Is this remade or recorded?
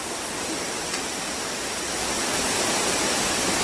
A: recorded